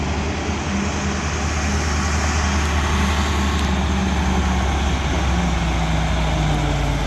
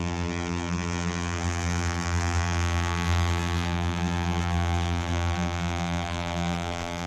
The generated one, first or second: second